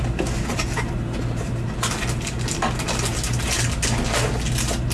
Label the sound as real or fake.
real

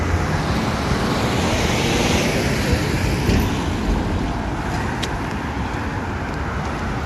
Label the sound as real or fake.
real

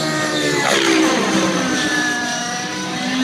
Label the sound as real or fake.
fake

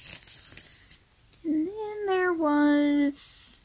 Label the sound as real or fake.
real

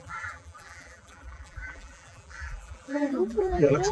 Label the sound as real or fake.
fake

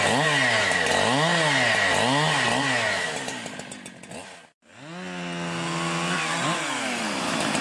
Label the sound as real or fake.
real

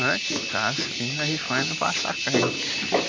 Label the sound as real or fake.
real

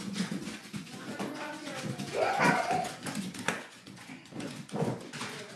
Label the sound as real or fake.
fake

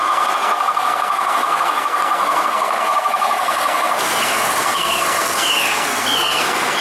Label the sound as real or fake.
fake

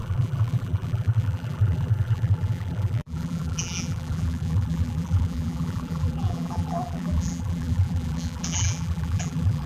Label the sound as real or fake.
fake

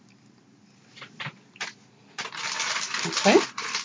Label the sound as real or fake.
real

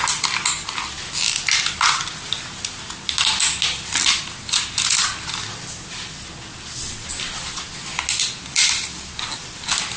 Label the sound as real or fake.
real